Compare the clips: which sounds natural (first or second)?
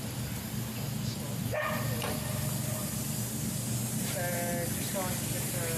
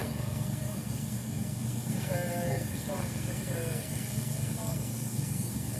first